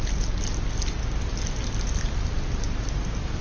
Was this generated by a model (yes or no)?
no